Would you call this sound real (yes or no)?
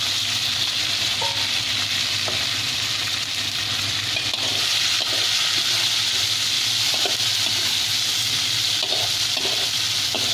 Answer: yes